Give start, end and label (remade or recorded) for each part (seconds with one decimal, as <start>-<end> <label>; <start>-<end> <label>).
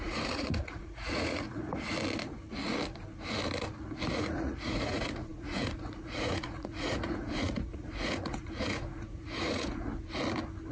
0.0-1.7 remade; 1.7-4.1 recorded; 4.1-9.9 remade; 9.9-10.7 recorded